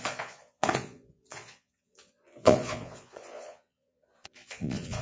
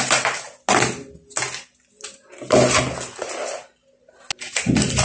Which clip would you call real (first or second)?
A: second